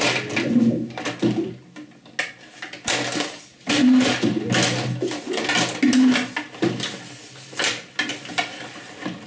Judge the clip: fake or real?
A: real